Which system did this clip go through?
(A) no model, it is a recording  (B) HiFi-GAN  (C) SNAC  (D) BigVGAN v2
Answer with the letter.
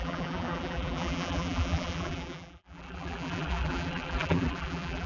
D